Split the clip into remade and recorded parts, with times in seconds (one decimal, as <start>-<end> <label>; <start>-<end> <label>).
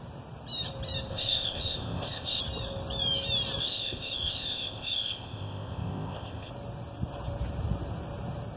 0.0-1.1 recorded; 1.1-2.4 remade; 2.4-3.6 recorded; 3.6-6.5 remade; 6.5-8.6 recorded